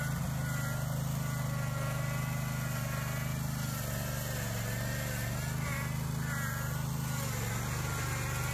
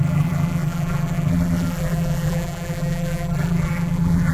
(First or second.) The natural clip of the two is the first